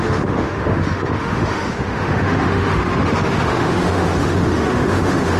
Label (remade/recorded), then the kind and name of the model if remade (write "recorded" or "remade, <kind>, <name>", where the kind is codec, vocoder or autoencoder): remade, autoencoder, DAC-VAE